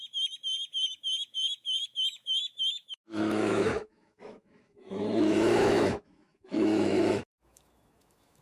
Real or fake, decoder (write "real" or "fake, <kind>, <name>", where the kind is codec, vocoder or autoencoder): fake, autoencoder, DAC-VAE